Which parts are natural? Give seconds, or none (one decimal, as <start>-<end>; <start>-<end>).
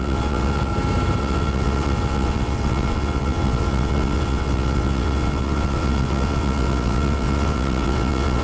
0.7-1.2